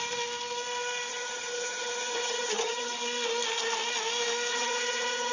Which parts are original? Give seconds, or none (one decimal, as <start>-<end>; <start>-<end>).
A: 0.0-1.1; 2.9-4.5

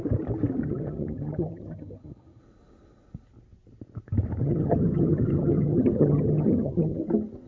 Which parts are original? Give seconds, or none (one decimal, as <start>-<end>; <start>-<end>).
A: 0.0-0.6; 2.4-4.4; 7.0-7.5

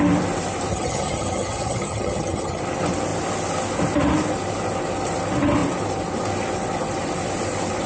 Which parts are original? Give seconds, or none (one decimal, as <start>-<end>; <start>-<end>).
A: 0.0-0.7; 2.6-7.9

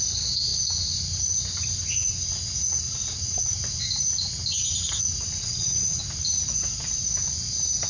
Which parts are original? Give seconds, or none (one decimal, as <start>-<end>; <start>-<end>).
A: 0.0-5.4; 6.0-7.9

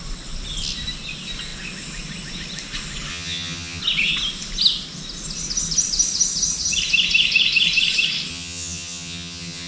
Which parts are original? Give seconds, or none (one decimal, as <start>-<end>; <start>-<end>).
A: 0.0-3.1; 3.8-8.3